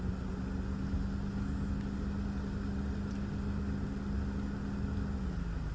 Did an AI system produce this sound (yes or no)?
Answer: no